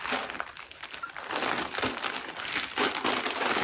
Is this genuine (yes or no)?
yes